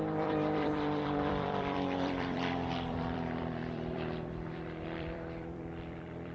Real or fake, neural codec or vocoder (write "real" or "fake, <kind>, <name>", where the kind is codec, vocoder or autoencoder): fake, vocoder, BigVGAN v2